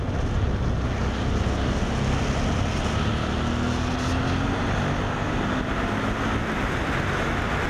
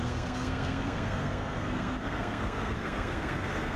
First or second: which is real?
first